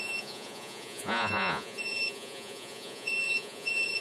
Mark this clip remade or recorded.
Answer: remade